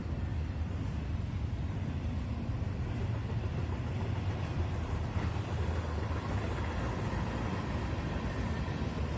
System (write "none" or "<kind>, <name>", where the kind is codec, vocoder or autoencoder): none